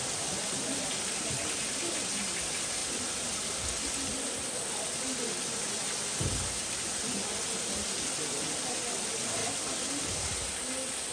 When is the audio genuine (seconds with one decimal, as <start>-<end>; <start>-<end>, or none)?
0.0-2.8; 5.2-11.1